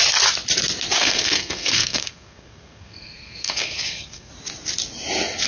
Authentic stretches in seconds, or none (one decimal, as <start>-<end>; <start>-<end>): 0.0-1.0; 4.3-5.5